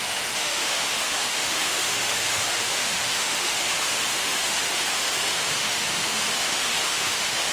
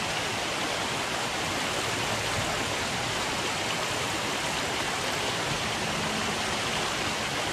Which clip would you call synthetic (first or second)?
first